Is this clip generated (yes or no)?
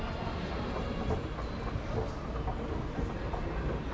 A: no